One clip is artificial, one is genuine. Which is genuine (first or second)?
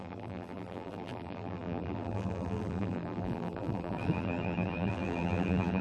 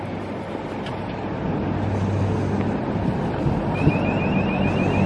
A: second